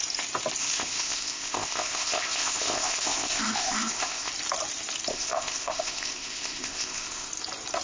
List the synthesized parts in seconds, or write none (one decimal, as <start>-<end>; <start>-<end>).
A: 0.6-4.3; 5.1-7.3